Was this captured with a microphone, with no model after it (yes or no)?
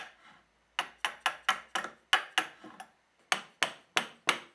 yes